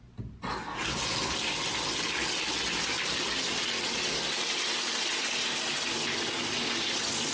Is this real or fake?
real